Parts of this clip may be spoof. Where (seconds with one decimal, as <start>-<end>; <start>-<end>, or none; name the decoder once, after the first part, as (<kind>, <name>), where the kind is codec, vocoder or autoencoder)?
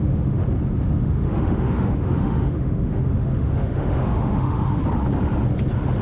0.0-0.4 (autoencoder, DAC-VAE); 1.0-4.8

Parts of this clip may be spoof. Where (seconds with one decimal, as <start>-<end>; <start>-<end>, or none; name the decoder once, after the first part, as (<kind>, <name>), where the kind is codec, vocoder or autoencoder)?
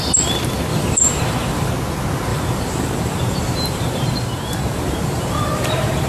0.7-1.7 (vocoder, BigVGAN v2); 2.3-6.1